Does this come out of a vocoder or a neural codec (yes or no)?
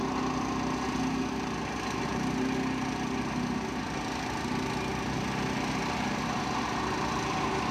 no